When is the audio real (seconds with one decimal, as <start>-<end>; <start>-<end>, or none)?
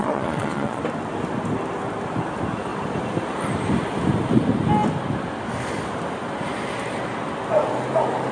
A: 0.8-8.3